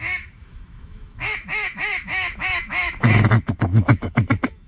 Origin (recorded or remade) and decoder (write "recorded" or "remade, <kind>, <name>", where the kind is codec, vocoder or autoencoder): remade, autoencoder, DAC-VAE